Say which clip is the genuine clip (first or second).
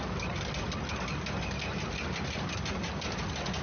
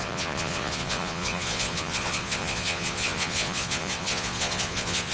first